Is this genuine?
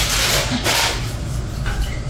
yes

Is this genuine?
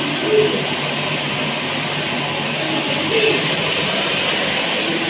yes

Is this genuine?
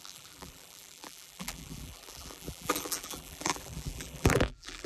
no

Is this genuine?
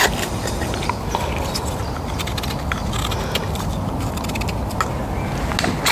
yes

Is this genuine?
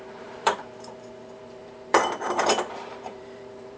no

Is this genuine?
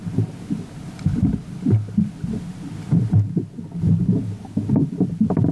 yes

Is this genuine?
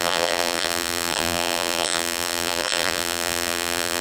no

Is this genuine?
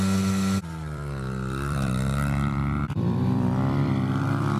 no